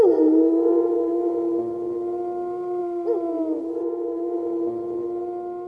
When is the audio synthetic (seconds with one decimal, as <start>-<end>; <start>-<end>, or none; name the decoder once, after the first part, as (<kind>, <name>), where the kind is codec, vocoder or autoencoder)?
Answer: none